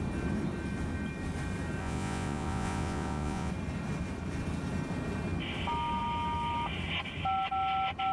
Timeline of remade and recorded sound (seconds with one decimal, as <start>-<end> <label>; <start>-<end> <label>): 0.0-1.8 recorded; 1.8-3.5 remade; 3.5-8.1 recorded